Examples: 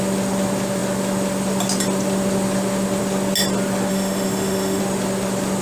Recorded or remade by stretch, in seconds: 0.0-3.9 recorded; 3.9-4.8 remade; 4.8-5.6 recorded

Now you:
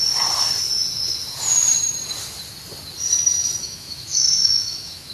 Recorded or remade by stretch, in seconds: 0.0-3.6 recorded; 3.6-5.1 remade

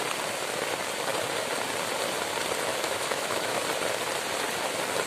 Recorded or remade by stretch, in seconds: 0.0-2.7 recorded; 2.7-3.6 remade; 3.6-5.1 recorded

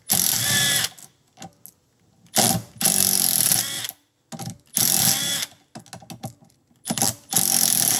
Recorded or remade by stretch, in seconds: 0.0-8.0 recorded

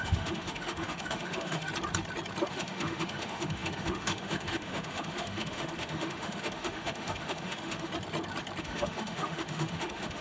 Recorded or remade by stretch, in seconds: 0.0-1.7 remade; 1.7-2.5 recorded; 2.5-7.9 remade; 7.9-8.6 recorded; 8.6-10.2 remade

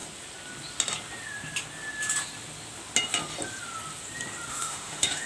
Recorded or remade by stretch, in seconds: 0.0-4.5 recorded; 4.5-5.3 remade